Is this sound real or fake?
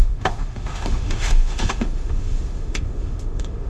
fake